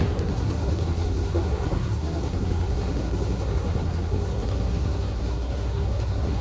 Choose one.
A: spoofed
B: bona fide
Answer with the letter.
A